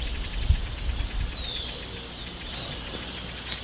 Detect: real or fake real